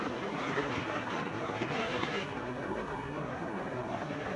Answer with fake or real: fake